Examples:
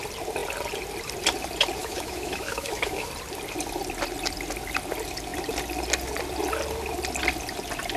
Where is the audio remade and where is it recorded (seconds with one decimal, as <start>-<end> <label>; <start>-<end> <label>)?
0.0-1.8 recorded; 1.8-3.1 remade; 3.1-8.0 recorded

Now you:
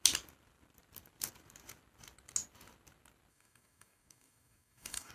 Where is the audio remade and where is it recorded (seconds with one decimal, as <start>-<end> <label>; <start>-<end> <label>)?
0.0-3.3 recorded; 3.3-5.1 remade

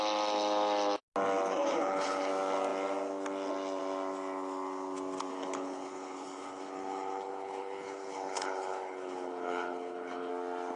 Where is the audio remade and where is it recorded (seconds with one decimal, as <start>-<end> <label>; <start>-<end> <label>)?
0.0-1.5 recorded; 1.5-2.3 remade; 2.3-5.3 recorded; 5.3-10.3 remade; 10.3-10.8 recorded

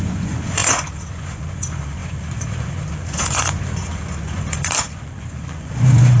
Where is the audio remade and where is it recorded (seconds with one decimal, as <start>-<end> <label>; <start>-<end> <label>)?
0.0-6.2 remade